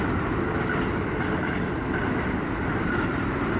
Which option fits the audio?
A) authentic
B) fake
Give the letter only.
A